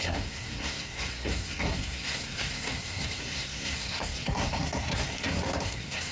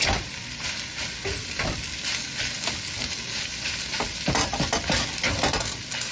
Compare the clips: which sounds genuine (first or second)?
second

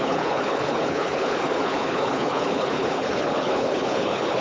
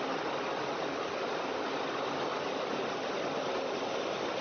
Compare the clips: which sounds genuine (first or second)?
second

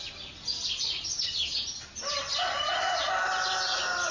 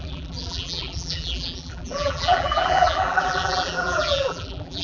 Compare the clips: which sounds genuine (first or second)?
first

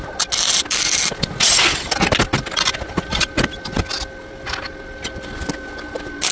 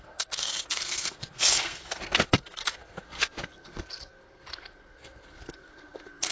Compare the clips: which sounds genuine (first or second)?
first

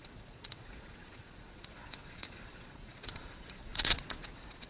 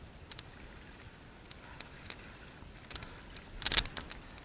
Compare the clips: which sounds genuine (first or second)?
second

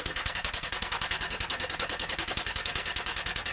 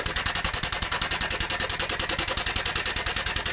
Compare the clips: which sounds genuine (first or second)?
second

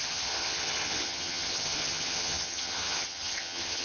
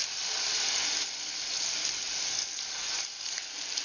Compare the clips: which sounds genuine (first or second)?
second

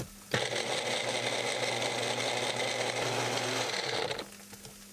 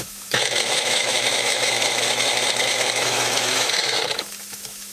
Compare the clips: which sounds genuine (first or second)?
first